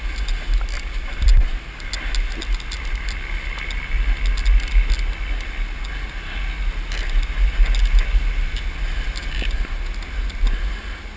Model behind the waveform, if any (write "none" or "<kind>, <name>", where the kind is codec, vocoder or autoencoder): none